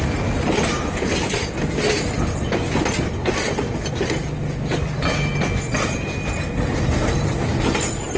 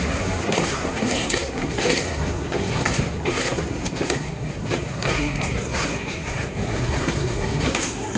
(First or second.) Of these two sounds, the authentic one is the first